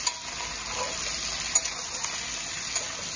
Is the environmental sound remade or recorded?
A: recorded